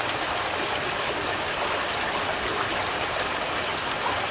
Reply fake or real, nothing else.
real